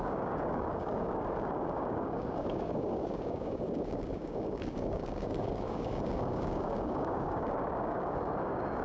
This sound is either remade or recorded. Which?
remade